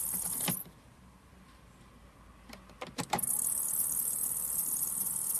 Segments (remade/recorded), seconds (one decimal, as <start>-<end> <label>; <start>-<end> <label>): 0.0-5.4 recorded